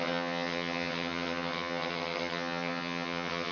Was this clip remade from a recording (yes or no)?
yes